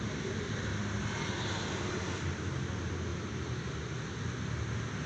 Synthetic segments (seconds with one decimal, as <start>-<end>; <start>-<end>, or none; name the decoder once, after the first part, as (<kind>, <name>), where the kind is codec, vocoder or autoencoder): none